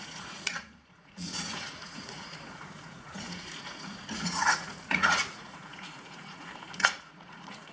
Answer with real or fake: fake